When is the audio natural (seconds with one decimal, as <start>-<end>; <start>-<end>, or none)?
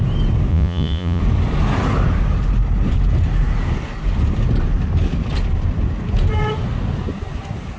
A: 0.0-0.5; 1.2-7.8